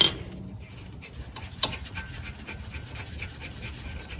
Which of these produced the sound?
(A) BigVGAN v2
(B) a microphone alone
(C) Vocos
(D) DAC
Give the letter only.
B